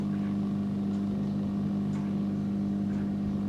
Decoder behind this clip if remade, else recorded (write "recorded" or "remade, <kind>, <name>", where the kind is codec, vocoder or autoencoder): recorded